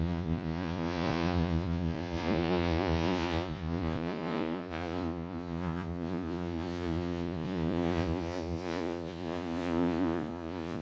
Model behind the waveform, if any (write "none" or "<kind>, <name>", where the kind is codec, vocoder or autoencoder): vocoder, Vocos